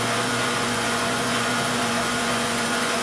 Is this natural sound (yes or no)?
no